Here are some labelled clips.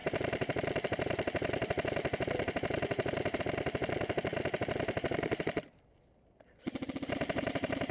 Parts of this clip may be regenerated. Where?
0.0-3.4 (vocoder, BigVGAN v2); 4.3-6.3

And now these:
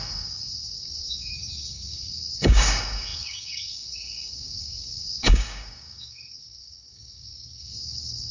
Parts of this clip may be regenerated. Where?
0.0-8.3 (codec, DAC)

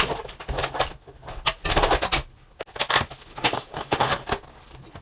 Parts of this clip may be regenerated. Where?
3.3-4.1 (autoencoder, DAC-VAE)

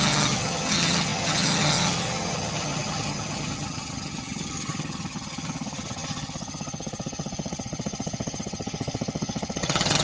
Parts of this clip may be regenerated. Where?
0.0-10.0 (vocoder, HiFi-GAN)

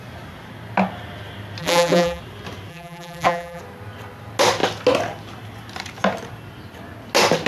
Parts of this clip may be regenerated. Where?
1.6-2.2 (vocoder, BigVGAN v2); 2.7-3.6

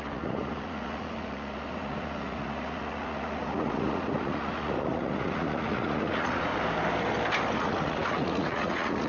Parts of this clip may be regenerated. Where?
0.0-6.5 (vocoder, Vocos); 7.6-9.1

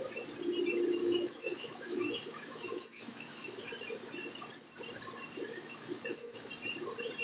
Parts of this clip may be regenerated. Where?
1.0-3.7 (autoencoder, DAC-VAE); 5.5-6.5

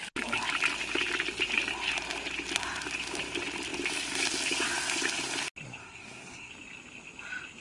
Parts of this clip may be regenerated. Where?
5.8-6.5 (codec, SNAC)